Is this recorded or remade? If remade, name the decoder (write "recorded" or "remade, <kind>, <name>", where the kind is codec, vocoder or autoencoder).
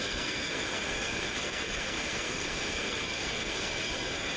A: remade, codec, SNAC